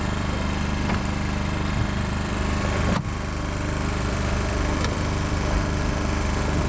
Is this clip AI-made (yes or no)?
yes